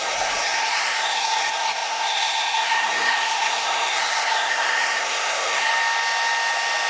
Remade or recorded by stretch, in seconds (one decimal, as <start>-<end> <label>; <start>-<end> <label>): 0.0-5.7 remade; 5.7-6.9 recorded